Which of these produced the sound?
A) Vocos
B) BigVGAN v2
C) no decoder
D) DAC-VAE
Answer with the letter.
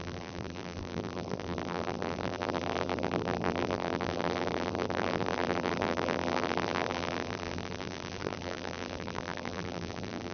B